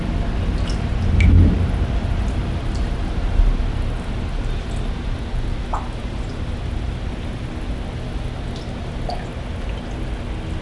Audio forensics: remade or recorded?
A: recorded